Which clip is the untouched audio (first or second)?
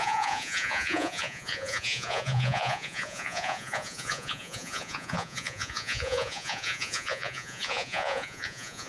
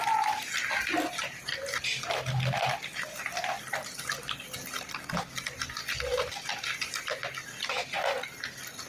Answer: second